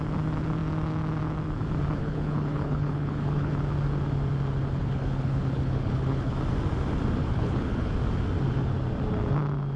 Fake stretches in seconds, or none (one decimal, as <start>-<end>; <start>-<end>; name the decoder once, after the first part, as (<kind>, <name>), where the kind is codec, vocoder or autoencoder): 2.0-3.5 (codec, HILCodec); 4.8-6.3; 7.2-7.9